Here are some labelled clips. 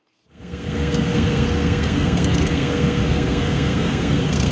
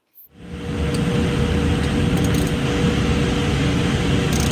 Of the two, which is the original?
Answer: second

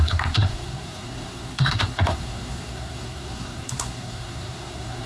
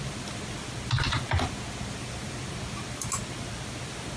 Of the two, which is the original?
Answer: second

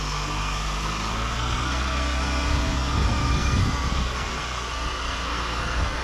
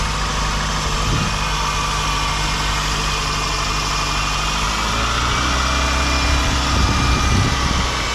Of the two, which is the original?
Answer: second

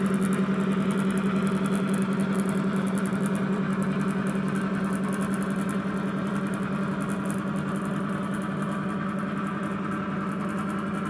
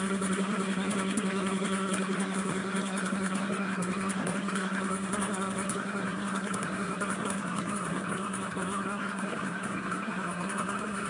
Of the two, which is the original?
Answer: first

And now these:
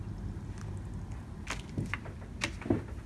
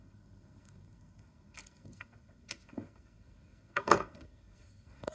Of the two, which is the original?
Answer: first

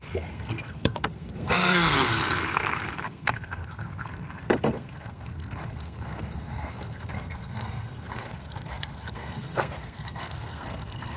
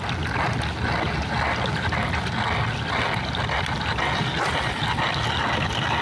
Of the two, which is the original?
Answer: second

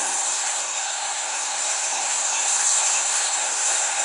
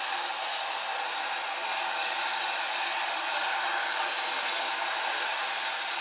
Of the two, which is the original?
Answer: second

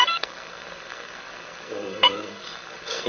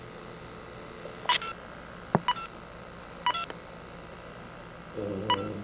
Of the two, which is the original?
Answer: second